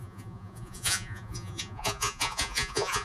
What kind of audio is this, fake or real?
fake